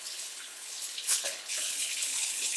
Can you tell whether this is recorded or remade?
remade